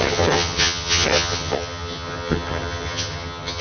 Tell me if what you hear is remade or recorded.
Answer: remade